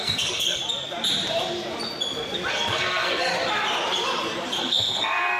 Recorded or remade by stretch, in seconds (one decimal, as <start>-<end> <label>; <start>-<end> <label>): 0.0-0.6 remade; 0.6-2.5 recorded; 2.5-3.3 remade; 3.3-4.6 recorded; 4.6-5.4 remade